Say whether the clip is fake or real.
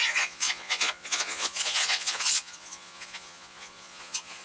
fake